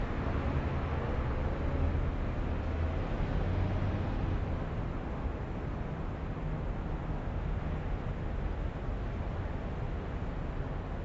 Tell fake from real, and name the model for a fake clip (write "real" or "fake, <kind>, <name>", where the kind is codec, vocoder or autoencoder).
real